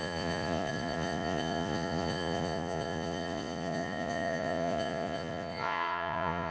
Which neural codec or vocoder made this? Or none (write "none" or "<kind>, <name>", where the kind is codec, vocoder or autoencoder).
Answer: vocoder, Vocos